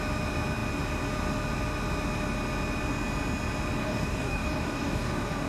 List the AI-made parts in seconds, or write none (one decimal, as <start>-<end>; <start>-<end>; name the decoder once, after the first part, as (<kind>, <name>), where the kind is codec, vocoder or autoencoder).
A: 3.8-5.5 (codec, DAC)